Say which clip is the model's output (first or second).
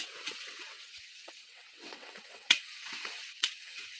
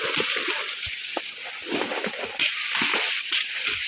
first